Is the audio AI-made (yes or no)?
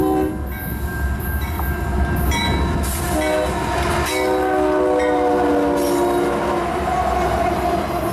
no